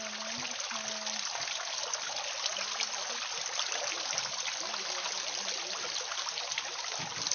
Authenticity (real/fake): real